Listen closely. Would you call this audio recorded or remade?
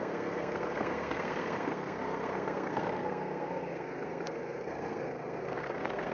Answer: remade